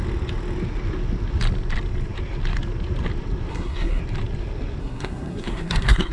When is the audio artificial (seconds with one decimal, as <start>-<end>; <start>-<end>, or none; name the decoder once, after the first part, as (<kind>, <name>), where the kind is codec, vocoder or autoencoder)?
3.5-4.0 (codec, SNAC); 4.8-6.1